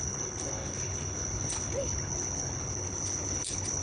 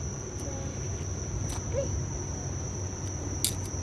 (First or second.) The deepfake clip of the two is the first